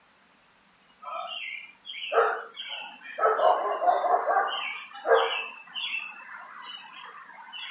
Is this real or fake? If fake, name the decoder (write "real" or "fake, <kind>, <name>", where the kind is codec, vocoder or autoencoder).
real